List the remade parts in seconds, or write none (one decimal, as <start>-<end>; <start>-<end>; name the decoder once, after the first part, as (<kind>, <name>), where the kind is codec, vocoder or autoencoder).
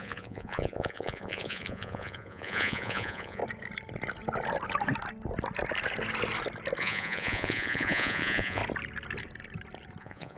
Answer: 0.0-3.4 (vocoder, Vocos); 6.8-8.6; 10.0-10.4